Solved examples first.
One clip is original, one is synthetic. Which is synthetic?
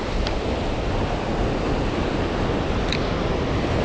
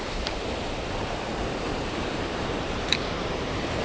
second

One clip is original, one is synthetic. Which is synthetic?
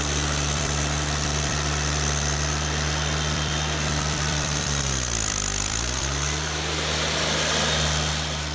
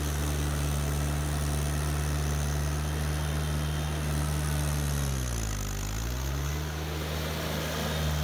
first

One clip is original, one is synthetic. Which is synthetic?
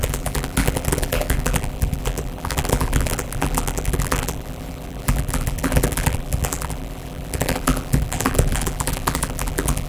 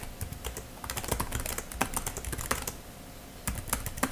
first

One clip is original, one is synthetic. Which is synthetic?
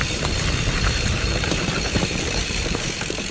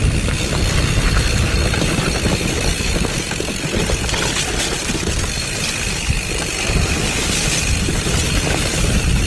first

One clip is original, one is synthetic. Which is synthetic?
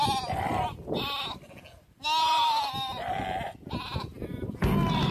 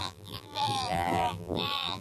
second